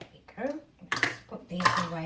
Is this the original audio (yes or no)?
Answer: yes